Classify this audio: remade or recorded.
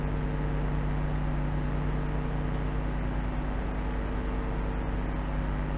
recorded